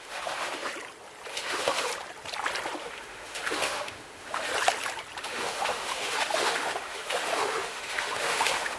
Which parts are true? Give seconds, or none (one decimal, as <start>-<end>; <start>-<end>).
0.7-1.3; 1.9-2.8; 4.5-5.2